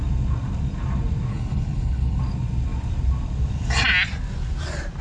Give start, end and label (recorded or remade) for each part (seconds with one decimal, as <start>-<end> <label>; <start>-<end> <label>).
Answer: 0.0-1.3 recorded; 1.3-2.2 remade; 2.2-5.0 recorded